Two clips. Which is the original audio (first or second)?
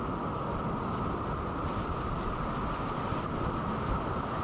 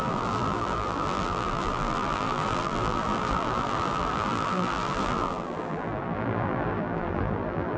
first